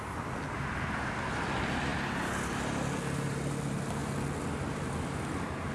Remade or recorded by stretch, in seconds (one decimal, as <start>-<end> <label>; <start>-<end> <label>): 0.0-5.7 recorded